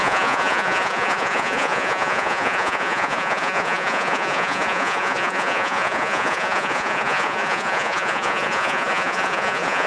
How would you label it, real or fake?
fake